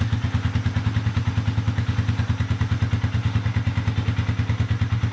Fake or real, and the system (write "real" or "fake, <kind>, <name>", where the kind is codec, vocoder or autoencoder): real